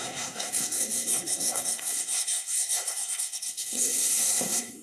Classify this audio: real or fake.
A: fake